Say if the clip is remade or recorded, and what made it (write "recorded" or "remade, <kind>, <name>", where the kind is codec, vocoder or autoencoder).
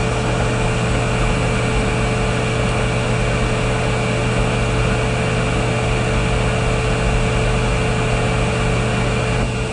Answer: recorded